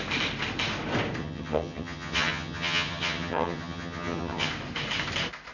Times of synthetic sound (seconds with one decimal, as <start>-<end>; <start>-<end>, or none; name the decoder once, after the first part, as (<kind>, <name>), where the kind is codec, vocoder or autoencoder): 1.2-4.5 (vocoder, HiFi-GAN)